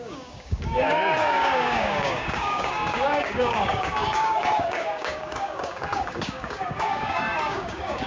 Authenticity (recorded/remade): remade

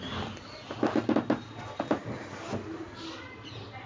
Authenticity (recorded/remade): recorded